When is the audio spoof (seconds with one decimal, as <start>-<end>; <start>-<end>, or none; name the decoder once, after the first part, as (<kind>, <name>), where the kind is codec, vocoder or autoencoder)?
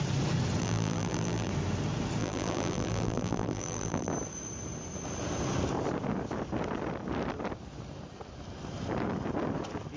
0.6-1.5 (vocoder, BigVGAN v2); 2.2-4.1